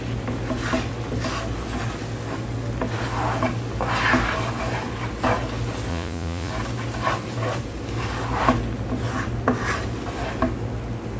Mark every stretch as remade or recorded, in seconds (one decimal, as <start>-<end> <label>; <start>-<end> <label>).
0.0-5.9 recorded; 5.9-6.5 remade; 6.5-11.2 recorded